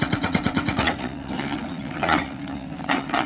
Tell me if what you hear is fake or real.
fake